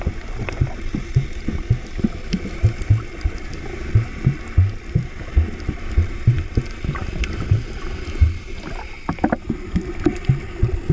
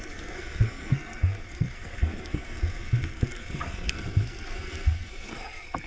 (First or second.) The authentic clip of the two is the first